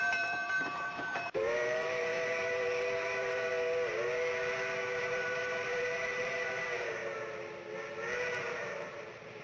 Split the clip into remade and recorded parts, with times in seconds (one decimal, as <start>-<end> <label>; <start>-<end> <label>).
0.0-3.5 remade; 3.5-5.0 recorded; 5.0-7.0 remade; 7.0-8.7 recorded; 8.7-9.4 remade